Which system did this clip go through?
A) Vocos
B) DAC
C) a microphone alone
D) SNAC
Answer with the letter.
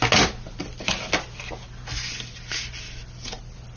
C